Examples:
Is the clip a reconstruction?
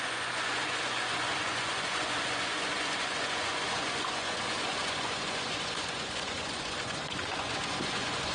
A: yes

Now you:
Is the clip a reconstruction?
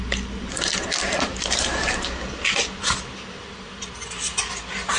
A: no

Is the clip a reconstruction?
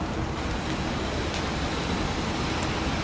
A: no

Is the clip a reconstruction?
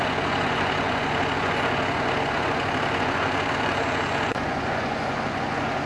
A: yes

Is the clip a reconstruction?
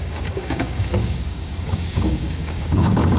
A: yes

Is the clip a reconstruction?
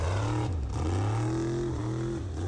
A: no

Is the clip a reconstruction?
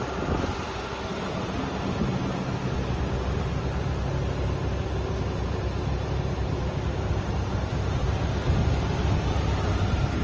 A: no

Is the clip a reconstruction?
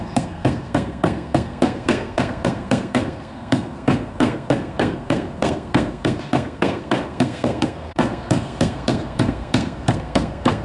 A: yes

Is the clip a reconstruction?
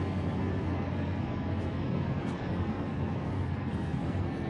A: yes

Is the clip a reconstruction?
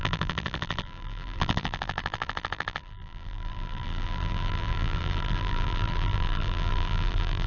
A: yes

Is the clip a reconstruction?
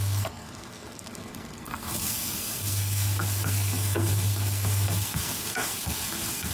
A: yes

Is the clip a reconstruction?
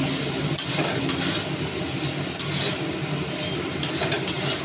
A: no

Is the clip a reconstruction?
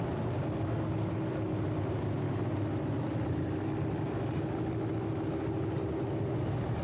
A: no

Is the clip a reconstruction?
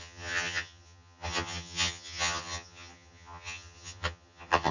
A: yes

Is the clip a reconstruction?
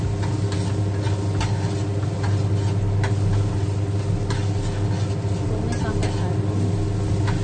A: no